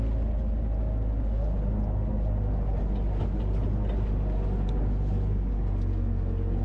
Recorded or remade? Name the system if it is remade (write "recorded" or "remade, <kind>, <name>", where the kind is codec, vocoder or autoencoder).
recorded